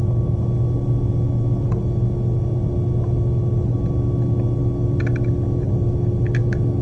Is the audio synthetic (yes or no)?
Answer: no